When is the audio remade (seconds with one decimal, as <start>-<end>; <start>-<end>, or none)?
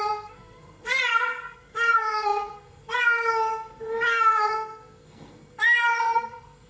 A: 0.0-6.7